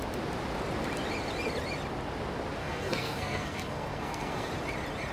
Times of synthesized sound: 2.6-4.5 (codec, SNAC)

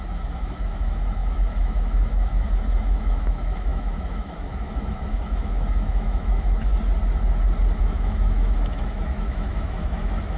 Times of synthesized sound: 0.0-6.7 (autoencoder, DAC-VAE); 7.8-10.4

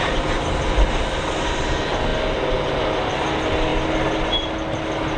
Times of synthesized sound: none

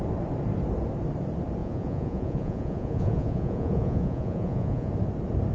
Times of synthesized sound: 1.6-4.9 (vocoder, Vocos)

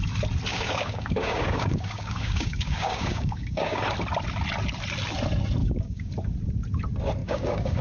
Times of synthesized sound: 0.5-3.8 (codec, DAC); 5.6-6.1; 7.2-7.8

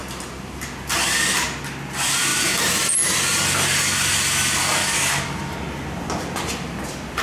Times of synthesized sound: 4.8-5.4 (codec, DAC)